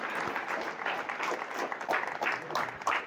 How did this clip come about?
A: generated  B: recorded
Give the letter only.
B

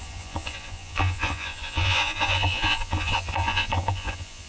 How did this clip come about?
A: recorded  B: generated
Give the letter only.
B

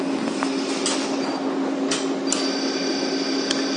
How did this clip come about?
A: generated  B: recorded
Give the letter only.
B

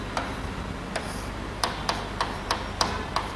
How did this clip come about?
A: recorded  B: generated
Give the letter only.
B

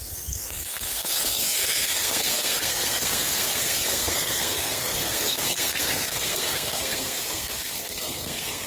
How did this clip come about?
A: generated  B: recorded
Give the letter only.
A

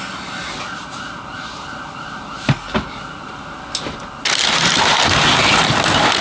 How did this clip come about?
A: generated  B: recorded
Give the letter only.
B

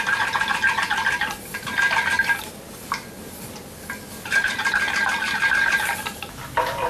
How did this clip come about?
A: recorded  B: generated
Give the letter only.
A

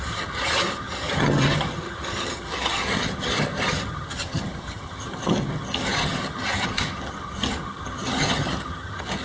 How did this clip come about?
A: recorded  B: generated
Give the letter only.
B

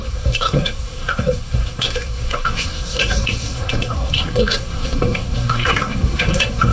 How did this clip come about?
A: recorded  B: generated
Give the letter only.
B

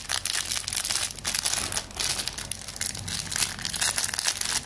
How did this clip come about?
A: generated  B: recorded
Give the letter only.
B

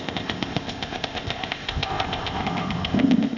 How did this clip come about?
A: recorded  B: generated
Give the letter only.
B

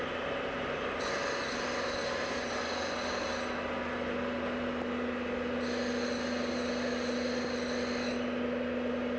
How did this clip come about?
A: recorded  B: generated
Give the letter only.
A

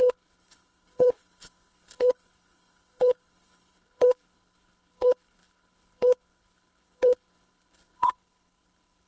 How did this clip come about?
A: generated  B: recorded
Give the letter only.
A